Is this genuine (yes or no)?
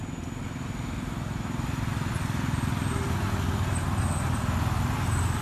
yes